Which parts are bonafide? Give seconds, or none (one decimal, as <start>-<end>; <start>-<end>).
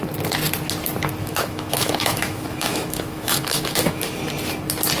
0.0-1.2; 4.2-5.0